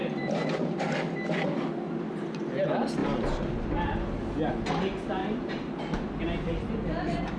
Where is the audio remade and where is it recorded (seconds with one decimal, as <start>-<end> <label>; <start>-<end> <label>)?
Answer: 0.0-0.7 remade; 0.7-5.2 recorded; 5.2-5.7 remade; 5.7-7.4 recorded